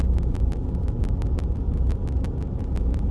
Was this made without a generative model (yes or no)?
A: yes